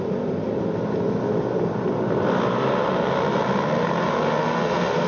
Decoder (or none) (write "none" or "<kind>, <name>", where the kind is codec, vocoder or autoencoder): none